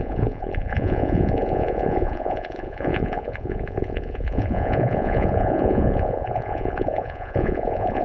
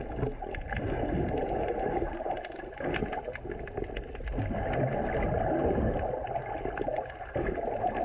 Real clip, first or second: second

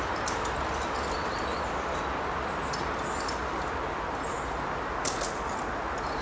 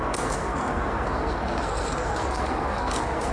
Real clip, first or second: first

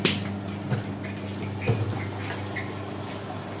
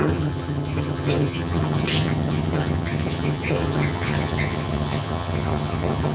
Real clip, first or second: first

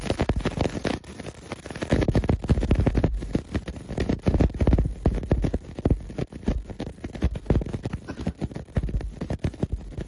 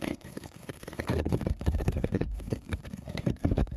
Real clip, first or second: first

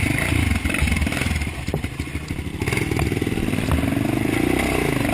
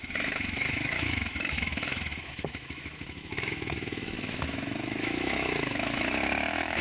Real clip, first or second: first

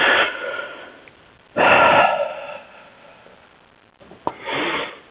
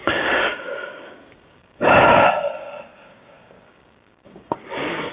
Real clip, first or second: first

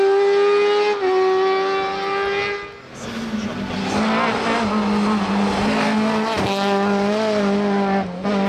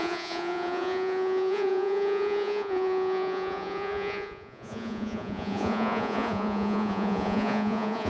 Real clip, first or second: first